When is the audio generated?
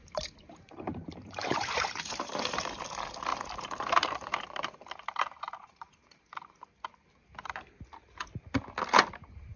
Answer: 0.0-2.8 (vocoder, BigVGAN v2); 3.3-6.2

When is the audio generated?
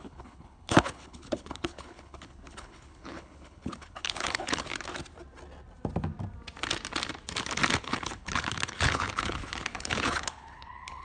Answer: 0.0-4.7 (codec, HILCodec); 7.8-11.0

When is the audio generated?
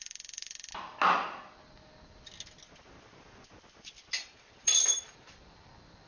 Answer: 0.0-0.7 (vocoder, BigVGAN v2); 4.4-6.1